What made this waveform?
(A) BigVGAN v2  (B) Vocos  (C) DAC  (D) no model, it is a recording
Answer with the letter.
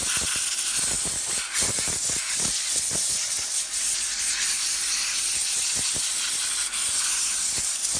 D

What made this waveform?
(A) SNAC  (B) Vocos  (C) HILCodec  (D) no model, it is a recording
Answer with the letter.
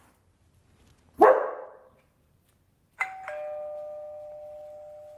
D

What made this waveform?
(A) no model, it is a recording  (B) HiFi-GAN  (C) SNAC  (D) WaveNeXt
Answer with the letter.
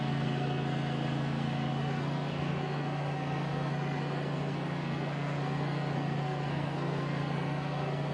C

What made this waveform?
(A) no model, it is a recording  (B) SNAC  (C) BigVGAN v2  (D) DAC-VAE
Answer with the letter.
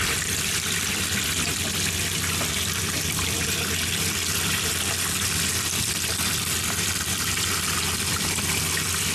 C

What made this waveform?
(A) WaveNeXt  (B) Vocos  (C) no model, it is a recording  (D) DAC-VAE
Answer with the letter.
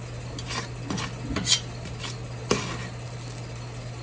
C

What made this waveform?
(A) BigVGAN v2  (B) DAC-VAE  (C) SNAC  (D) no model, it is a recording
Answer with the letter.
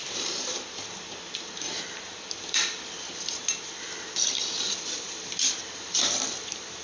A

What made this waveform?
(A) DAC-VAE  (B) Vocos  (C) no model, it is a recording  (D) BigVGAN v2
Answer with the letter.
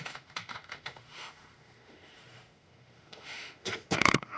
A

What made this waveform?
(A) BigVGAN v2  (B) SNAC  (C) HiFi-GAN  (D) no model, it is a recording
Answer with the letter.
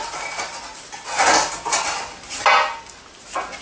D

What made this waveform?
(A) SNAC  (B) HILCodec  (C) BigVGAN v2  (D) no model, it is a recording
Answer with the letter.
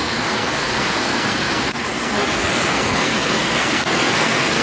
A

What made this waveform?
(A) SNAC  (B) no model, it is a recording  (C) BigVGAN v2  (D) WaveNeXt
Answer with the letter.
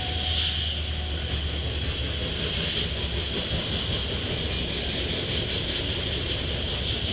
B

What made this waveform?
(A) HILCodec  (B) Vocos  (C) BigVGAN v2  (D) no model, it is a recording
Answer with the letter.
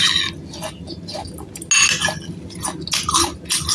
D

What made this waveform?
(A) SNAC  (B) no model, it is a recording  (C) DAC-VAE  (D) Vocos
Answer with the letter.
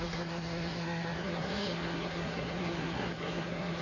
A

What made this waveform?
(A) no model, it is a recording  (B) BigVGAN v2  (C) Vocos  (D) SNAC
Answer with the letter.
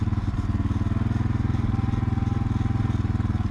A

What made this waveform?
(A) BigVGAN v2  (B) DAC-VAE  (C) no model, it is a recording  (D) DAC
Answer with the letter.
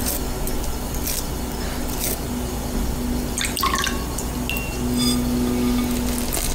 C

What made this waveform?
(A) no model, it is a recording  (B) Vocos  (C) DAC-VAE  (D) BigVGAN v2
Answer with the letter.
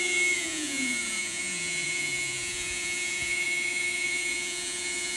B